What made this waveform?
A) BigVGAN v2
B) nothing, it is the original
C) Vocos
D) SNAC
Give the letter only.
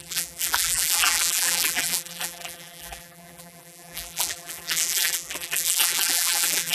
A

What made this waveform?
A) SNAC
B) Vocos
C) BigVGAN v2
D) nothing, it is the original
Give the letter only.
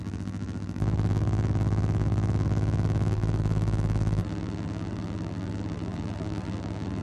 C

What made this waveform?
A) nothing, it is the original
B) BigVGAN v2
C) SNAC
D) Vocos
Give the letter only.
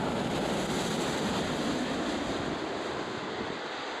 A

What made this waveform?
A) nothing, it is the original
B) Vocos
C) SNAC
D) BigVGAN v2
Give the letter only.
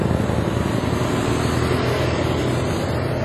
A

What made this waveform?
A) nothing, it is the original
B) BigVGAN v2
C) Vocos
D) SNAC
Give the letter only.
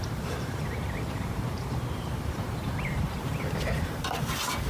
B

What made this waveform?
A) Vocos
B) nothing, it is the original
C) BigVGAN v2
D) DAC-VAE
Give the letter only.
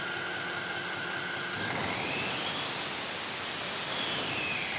B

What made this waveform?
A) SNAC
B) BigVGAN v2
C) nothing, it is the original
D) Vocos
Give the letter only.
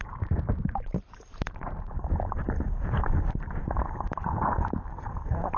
B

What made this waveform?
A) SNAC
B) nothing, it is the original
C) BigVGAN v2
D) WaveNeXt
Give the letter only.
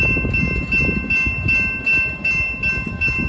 B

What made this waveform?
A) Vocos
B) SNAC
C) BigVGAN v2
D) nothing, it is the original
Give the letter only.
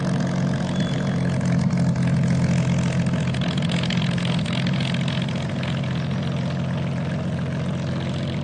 D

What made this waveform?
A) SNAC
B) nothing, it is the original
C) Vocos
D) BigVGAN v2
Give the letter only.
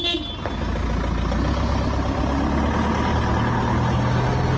B